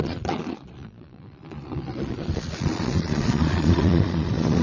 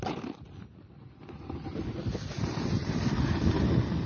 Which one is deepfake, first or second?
first